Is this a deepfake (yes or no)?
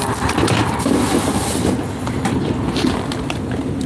no